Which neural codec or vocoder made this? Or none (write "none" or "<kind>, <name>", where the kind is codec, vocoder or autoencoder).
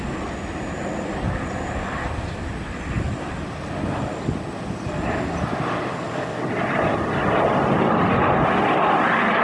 none